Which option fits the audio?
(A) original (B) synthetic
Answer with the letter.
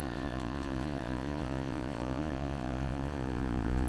B